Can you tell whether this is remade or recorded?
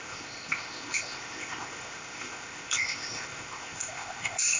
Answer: remade